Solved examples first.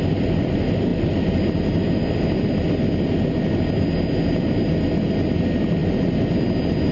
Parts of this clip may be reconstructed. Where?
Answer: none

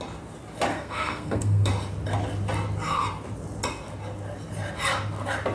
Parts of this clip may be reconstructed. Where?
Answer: 0.7-1.7 (codec, SNAC)

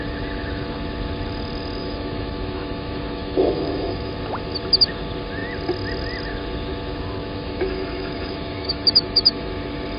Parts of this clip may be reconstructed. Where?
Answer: 1.8-4.1 (autoencoder, DAC-VAE); 7.2-9.5

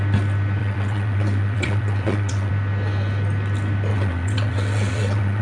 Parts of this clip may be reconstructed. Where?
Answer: 0.6-2.5 (vocoder, WaveNeXt); 3.9-5.4

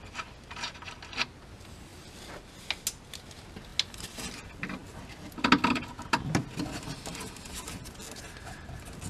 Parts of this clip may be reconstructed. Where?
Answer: none

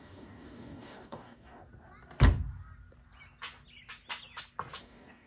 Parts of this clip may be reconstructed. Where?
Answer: 0.0-1.6 (codec, DAC); 4.8-5.3

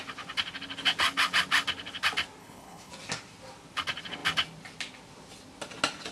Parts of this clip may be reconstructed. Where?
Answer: 2.4-2.9 (codec, HILCodec)